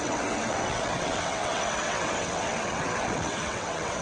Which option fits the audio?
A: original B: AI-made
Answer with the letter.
B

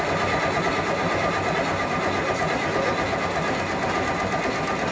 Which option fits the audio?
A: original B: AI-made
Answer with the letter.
A